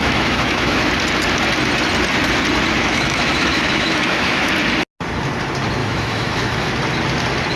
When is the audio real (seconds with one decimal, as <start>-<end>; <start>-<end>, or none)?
0.9-2.8; 4.5-5.8; 6.7-7.6